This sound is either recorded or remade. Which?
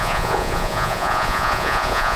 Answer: remade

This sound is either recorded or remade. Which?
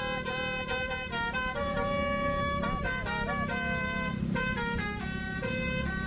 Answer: recorded